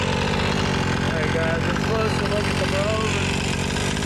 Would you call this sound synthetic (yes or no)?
no